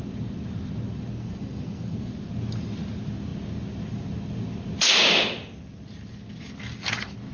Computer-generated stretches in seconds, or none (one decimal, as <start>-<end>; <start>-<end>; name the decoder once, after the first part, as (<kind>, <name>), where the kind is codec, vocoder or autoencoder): 1.2-2.1 (codec, SNAC)